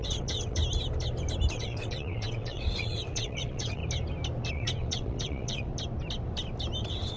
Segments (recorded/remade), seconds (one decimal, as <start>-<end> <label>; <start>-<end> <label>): 0.0-0.6 remade; 0.6-1.5 recorded; 1.5-3.8 remade; 3.8-4.5 recorded; 4.5-5.7 remade; 5.7-6.8 recorded; 6.8-7.2 remade